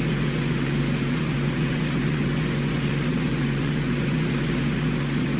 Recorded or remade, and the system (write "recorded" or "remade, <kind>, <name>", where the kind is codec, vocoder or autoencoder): remade, vocoder, Vocos